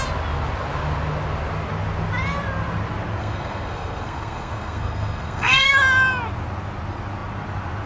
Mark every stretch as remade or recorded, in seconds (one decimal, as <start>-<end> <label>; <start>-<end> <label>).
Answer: 0.0-3.2 recorded; 3.2-5.7 remade; 5.7-7.9 recorded